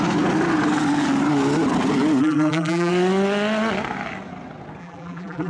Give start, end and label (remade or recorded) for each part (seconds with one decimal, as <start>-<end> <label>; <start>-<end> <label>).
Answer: 0.0-2.2 recorded; 2.2-2.9 remade; 2.9-4.8 recorded; 4.8-5.5 remade